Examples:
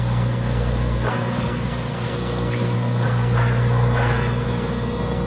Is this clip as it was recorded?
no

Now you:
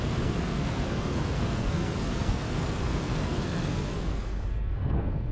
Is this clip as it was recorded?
no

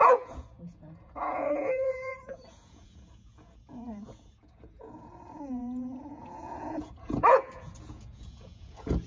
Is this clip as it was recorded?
no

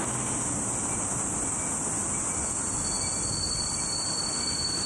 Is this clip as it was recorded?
yes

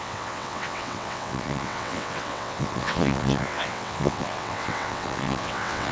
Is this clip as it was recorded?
no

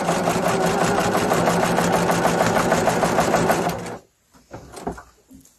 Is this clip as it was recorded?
yes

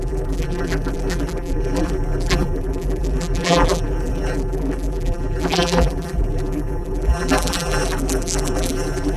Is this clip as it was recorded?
no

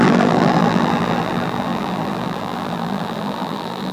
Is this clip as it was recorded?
no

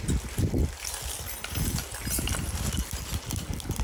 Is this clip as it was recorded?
yes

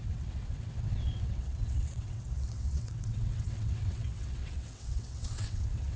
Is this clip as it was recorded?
no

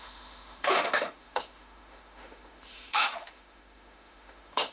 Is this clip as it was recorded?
no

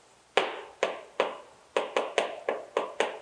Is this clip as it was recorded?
yes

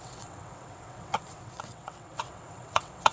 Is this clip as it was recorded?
no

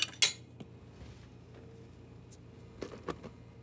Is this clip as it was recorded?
yes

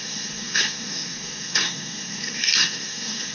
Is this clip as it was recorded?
no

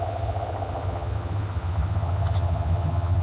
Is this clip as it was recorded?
no